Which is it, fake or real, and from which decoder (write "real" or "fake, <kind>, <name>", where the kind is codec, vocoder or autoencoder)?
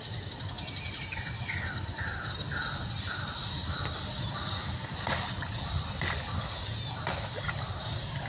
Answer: real